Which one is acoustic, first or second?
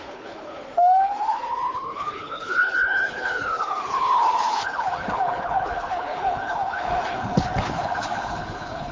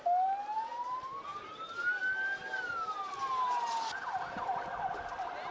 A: second